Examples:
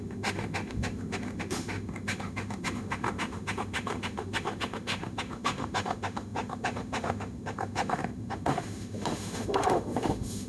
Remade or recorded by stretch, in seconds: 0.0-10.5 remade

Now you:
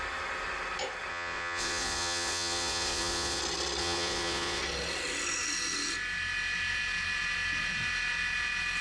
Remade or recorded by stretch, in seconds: 0.0-1.1 recorded; 1.1-3.4 remade; 3.4-3.8 recorded; 3.8-4.6 remade; 4.6-8.8 recorded

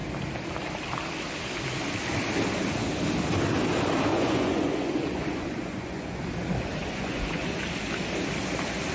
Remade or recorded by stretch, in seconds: 0.0-4.1 recorded; 4.1-6.3 remade; 6.3-6.8 recorded; 6.8-7.6 remade; 7.6-8.9 recorded

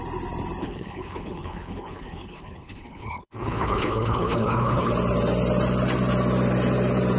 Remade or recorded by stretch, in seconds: 0.0-0.6 recorded; 0.6-4.9 remade; 4.9-7.2 recorded

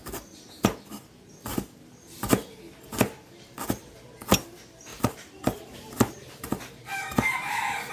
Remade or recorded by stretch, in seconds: 0.0-4.9 recorded; 4.9-7.9 remade

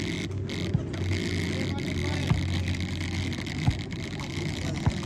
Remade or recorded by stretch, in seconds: 0.0-5.1 recorded

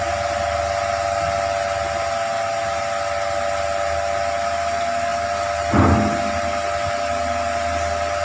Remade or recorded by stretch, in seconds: 0.0-8.2 recorded